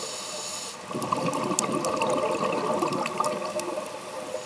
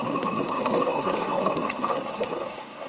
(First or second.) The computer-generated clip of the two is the second